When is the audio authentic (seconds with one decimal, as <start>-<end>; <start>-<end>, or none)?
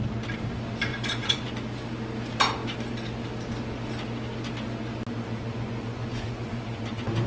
0.0-0.9; 1.5-5.5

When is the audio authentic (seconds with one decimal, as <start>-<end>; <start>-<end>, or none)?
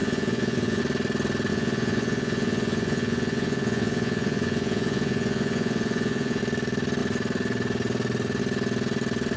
0.8-1.5; 6.4-9.4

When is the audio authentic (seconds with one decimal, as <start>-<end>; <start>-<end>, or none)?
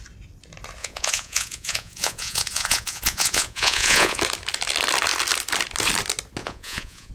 0.0-0.8; 4.2-6.4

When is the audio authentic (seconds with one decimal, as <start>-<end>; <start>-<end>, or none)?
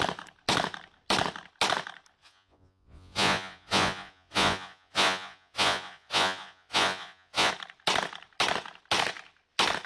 0.0-2.2; 7.5-9.9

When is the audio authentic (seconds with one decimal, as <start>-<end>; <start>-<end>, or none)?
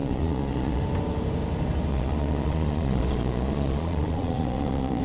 0.8-1.9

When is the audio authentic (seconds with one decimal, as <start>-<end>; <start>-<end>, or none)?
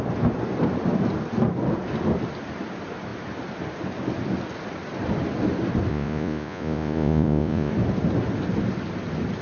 0.0-5.9; 7.7-9.4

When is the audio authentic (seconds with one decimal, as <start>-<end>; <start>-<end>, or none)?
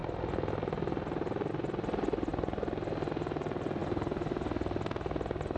0.0-5.6